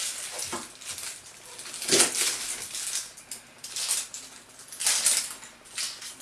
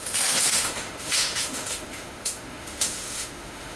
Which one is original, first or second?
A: first